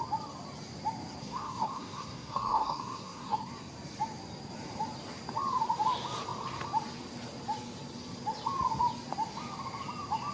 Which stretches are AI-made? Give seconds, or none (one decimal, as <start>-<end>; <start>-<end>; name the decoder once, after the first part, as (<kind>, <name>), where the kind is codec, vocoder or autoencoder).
1.2-3.5 (codec, SNAC)